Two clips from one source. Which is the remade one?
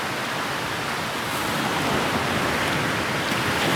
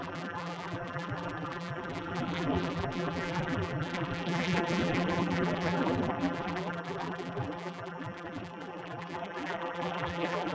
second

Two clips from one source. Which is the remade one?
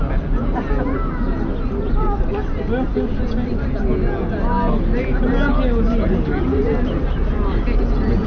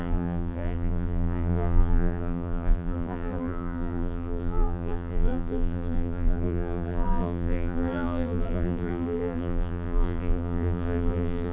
second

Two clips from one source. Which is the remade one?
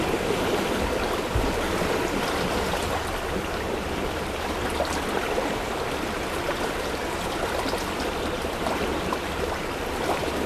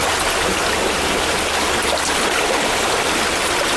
first